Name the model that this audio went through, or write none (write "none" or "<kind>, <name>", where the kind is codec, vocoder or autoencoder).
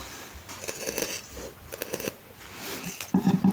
none